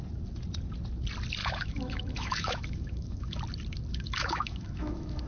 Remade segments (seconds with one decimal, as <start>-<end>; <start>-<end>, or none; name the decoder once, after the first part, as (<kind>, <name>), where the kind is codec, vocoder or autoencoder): 1.4-3.4 (autoencoder, DAC-VAE); 3.9-5.3